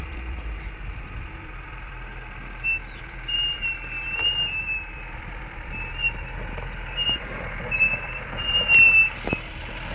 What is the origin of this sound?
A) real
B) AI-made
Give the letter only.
B